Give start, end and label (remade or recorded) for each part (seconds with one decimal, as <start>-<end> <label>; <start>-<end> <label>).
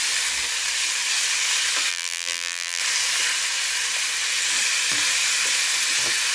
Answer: 0.0-1.9 recorded; 1.9-2.8 remade; 2.8-6.3 recorded